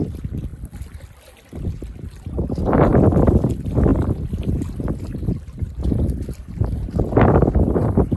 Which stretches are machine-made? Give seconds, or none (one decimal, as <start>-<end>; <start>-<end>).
0.5-1.9; 2.9-3.5; 3.9-6.9